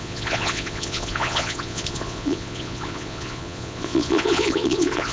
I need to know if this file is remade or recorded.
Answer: remade